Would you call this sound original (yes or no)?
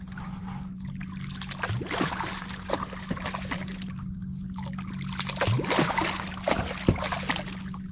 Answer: yes